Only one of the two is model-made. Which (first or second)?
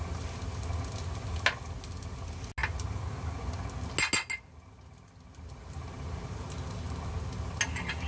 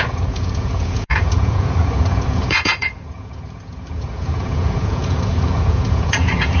second